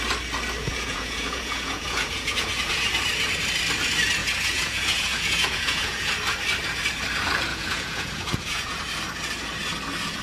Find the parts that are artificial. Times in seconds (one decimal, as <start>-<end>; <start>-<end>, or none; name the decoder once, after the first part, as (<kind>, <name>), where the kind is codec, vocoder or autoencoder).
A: 0.6-2.9 (vocoder, Vocos); 4.2-6.1; 7.5-8.6